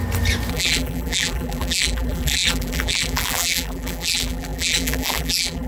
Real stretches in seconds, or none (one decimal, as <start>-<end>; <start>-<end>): 0.0-0.5

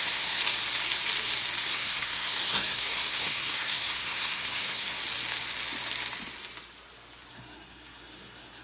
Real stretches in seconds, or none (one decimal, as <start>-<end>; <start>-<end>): 0.4-1.6; 5.0-7.3

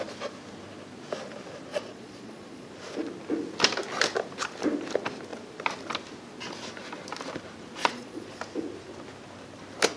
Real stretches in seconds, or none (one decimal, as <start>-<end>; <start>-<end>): 0.0-1.7; 2.7-7.8; 8.4-10.0

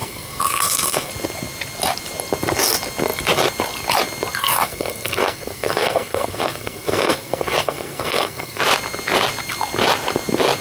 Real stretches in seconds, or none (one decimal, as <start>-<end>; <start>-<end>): 1.1-4.4; 8.6-10.6

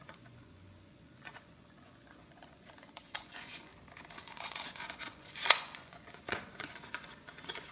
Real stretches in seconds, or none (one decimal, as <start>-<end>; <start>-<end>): 3.7-4.2

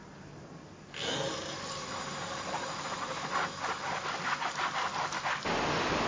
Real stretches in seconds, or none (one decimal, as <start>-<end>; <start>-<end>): 0.0-6.1

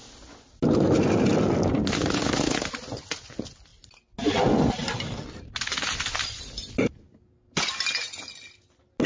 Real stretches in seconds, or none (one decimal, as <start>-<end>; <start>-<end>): 0.0-9.1